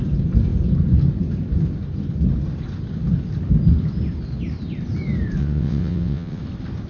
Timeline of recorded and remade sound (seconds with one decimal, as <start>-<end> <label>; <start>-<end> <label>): 0.0-5.4 recorded; 5.4-6.4 remade; 6.4-6.9 recorded